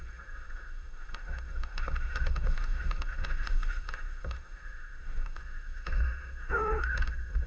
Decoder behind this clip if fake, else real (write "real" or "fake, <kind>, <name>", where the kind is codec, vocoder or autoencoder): fake, autoencoder, DAC-VAE